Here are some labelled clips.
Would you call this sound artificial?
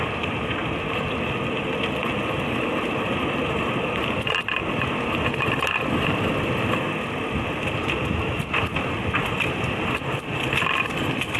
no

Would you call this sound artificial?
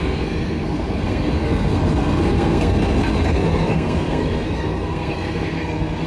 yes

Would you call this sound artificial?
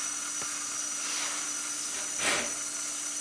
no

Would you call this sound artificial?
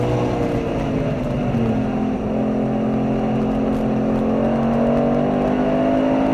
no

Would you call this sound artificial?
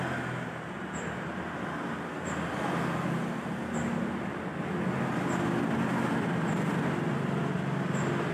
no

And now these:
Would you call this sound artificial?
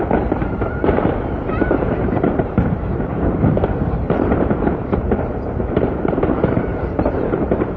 yes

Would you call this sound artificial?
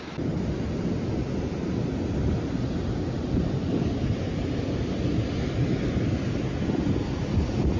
no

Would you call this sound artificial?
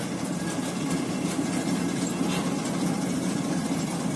no